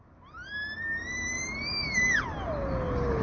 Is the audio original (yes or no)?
yes